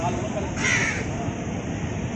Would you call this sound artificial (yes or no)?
no